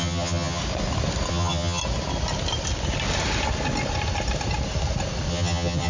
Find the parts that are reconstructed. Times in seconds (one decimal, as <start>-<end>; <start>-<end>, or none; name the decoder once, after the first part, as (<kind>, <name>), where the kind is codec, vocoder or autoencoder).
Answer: 0.0-0.6 (vocoder, HiFi-GAN); 1.3-1.8; 5.3-5.9